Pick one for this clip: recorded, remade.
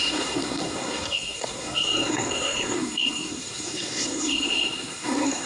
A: remade